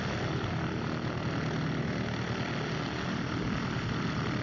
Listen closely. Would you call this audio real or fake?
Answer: real